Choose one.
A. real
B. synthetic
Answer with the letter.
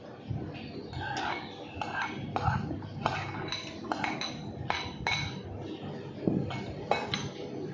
A